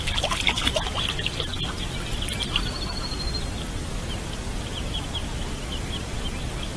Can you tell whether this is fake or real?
real